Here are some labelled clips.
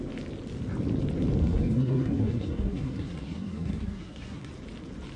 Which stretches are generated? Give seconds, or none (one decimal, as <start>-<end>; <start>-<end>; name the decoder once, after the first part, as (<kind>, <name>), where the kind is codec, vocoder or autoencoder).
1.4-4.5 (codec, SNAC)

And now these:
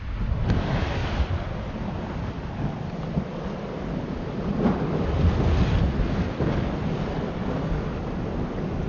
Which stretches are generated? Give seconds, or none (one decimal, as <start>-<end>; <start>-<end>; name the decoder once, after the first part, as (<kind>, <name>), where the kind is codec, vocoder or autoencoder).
1.0-4.6 (vocoder, BigVGAN v2)

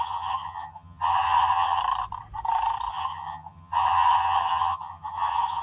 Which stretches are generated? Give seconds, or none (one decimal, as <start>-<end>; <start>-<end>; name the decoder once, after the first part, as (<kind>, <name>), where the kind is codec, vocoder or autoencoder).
0.0-1.8 (vocoder, HiFi-GAN); 2.9-5.6

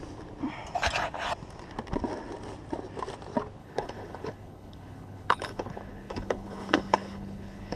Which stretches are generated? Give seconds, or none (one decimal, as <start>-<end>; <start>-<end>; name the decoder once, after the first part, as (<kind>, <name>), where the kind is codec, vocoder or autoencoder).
3.6-7.8 (codec, HILCodec)

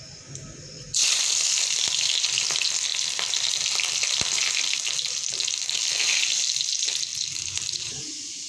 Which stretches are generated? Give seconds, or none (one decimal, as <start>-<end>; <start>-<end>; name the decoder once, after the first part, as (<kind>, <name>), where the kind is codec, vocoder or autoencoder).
7.1-8.5 (vocoder, BigVGAN v2)